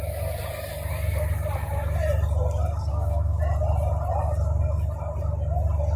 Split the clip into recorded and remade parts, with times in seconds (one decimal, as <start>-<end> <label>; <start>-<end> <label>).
0.0-2.9 recorded; 2.9-3.4 remade; 3.4-6.0 recorded